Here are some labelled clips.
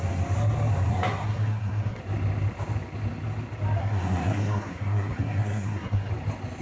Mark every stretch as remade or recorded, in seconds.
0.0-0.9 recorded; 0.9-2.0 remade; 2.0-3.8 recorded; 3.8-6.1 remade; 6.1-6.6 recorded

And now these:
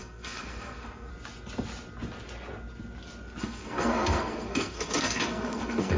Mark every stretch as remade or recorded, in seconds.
0.0-1.1 remade; 1.1-3.4 recorded; 3.4-6.0 remade